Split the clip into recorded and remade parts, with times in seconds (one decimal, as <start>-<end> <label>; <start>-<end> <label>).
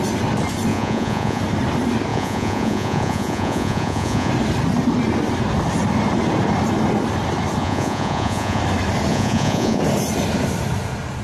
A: 0.0-0.7 recorded; 0.7-1.4 remade; 1.4-2.1 recorded; 2.1-4.3 remade; 4.3-7.6 recorded; 7.6-8.6 remade; 8.6-9.1 recorded; 9.1-9.8 remade; 9.8-11.2 recorded